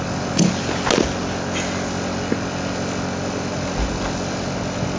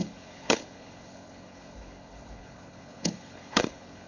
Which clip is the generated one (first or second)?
second